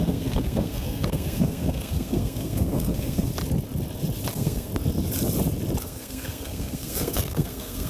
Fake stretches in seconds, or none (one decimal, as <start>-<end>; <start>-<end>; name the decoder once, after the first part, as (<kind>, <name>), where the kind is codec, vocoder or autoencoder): 0.0-3.3 (codec, SNAC); 4.3-4.7; 5.8-7.9